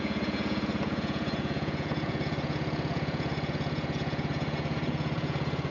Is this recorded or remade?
remade